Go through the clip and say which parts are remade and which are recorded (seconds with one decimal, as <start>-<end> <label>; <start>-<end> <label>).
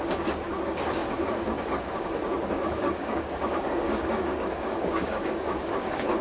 0.0-6.2 remade